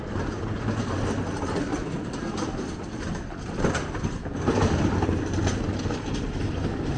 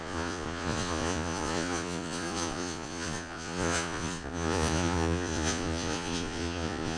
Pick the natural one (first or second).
first